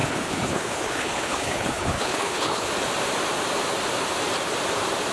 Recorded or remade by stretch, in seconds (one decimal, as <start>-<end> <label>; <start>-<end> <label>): 0.0-2.7 remade; 2.7-5.1 recorded